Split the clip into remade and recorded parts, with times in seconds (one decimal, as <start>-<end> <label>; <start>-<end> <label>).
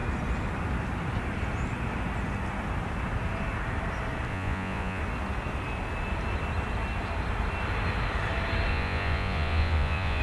0.0-4.3 recorded; 4.3-5.0 remade; 5.0-8.7 recorded; 8.7-10.2 remade